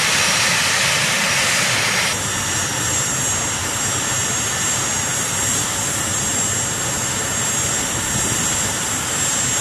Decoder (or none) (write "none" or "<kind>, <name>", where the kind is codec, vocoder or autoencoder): none